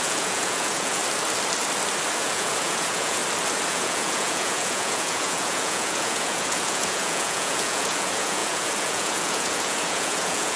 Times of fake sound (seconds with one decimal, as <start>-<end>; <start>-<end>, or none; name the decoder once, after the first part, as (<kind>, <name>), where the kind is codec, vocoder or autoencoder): 0.0-1.0 (vocoder, Vocos); 2.2-3.2; 3.7-10.6